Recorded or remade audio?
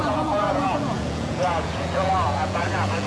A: remade